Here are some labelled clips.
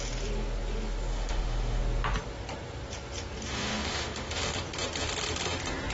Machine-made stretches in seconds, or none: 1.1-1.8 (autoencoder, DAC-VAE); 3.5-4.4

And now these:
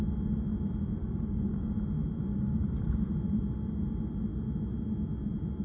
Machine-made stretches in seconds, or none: 1.0-1.7 (codec, DAC); 2.3-2.8

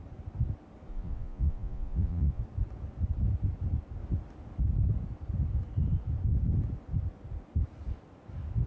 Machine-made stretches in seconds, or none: 0.9-2.4 (vocoder, Vocos)

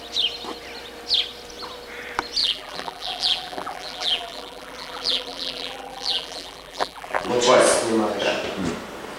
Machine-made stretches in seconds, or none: 2.4-7.3 (vocoder, BigVGAN v2)

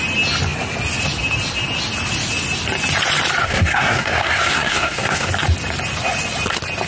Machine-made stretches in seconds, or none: 3.4-5.3 (codec, SNAC)

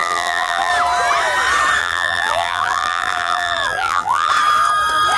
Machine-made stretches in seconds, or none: 0.0-0.7 (vocoder, BigVGAN v2); 1.8-4.3

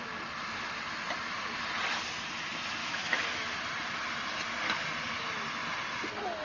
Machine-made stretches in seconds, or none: 2.8-3.6 (autoencoder, DAC-VAE)

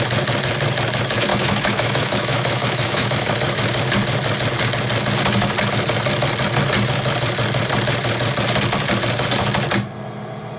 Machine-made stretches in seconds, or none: 1.3-3.3 (autoencoder, DAC-VAE)